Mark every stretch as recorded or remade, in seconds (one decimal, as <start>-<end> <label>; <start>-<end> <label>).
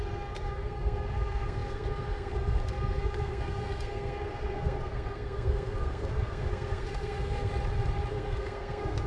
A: 0.0-7.5 remade; 7.5-8.1 recorded; 8.1-9.1 remade